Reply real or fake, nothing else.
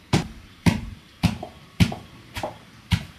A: fake